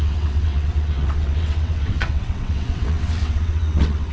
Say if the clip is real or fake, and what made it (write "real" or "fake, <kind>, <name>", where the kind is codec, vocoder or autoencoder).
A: fake, vocoder, WaveNeXt